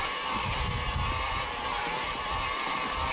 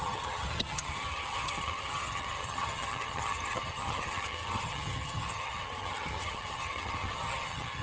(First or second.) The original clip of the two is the first